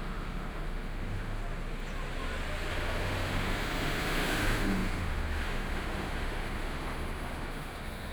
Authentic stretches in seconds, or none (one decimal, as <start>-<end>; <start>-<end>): 1.4-2.7